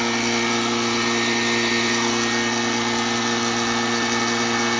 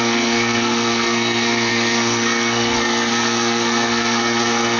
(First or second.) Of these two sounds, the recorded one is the first